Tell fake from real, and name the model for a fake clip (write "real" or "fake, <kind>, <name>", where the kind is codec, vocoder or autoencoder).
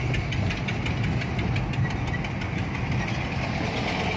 real